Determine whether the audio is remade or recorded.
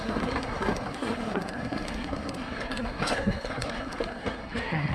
remade